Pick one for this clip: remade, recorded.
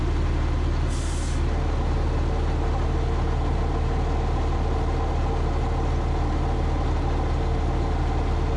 recorded